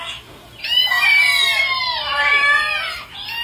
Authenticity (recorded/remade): recorded